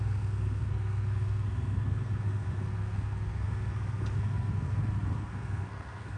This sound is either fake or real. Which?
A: fake